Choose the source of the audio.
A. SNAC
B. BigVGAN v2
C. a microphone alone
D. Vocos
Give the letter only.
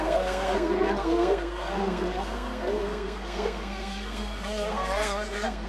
A